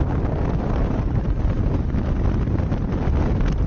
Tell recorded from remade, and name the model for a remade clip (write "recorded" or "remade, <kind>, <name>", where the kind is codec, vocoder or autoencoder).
recorded